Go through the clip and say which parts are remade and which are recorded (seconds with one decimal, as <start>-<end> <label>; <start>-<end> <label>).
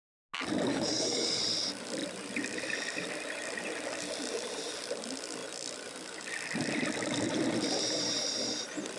0.0-0.7 recorded; 0.7-1.4 remade; 1.4-9.0 recorded